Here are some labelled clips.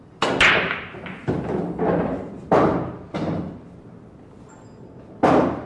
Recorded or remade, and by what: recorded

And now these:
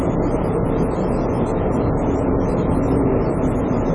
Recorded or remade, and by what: recorded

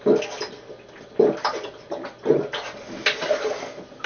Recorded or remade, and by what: recorded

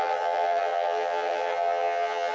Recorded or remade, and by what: remade, vocoder, HiFi-GAN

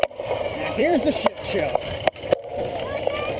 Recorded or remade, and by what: remade, vocoder, BigVGAN v2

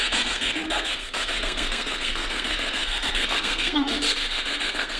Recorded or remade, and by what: remade, codec, SNAC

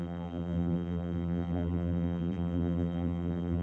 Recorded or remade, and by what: remade, vocoder, BigVGAN v2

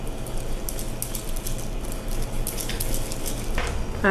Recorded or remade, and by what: recorded